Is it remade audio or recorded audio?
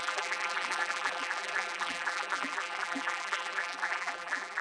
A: remade